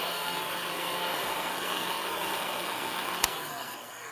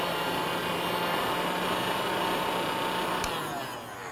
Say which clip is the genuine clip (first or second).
second